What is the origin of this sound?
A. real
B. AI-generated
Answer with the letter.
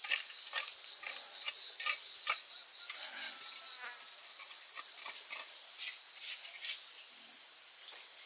A